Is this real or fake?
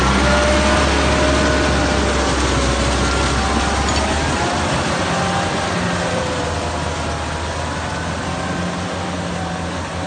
real